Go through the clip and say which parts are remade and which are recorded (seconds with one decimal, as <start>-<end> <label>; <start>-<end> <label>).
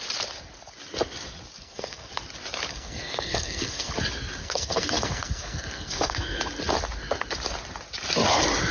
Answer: 0.0-1.6 recorded; 1.6-2.1 remade; 2.1-2.7 recorded; 2.7-3.9 remade; 3.9-4.4 recorded; 4.4-6.4 remade; 6.4-8.7 recorded